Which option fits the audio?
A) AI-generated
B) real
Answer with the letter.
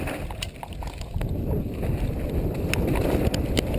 B